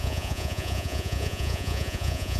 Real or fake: fake